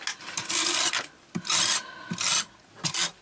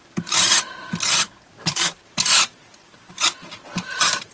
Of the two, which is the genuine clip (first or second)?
first